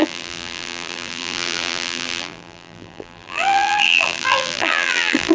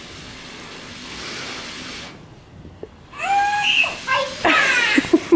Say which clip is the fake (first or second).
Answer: first